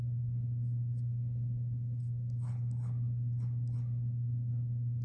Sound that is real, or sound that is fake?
fake